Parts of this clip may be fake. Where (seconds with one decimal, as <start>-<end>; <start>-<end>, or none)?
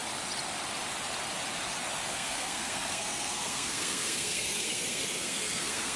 2.1-6.0